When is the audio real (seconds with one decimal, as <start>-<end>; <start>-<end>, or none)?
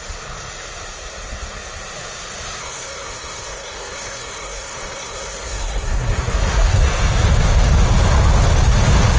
0.0-2.6; 6.9-9.2